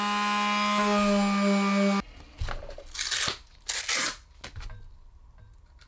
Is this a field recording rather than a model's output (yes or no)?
yes